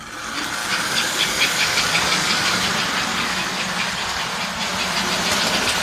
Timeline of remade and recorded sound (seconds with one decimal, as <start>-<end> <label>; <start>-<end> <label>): 0.0-0.6 recorded; 0.6-2.7 remade; 2.7-3.1 recorded; 3.1-3.9 remade; 3.9-5.8 recorded